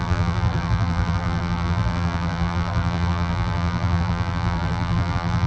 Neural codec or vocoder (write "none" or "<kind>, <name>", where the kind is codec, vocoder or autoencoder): vocoder, BigVGAN v2